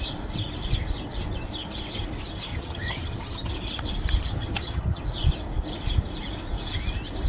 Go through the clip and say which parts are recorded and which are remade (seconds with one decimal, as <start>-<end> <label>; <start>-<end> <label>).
0.0-2.5 recorded; 2.5-3.5 remade; 3.5-4.3 recorded; 4.3-5.0 remade; 5.0-7.3 recorded